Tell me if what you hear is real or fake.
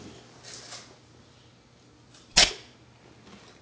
real